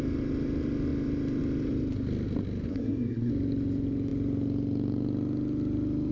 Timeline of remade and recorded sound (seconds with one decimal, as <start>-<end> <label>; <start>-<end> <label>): 0.0-2.7 recorded; 2.7-3.3 remade; 3.3-6.1 recorded